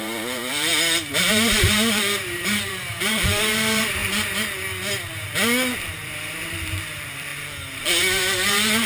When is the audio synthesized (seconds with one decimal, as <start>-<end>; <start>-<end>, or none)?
0.0-0.7; 1.2-4.0; 5.9-8.9